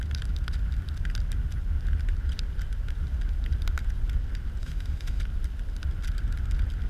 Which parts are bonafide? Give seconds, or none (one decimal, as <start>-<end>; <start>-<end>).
0.0-4.6; 5.2-6.9